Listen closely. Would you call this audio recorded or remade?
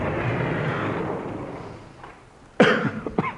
recorded